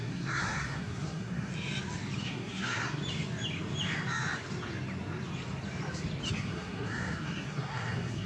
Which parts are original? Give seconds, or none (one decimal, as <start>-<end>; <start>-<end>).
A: 1.5-2.2; 3.0-6.3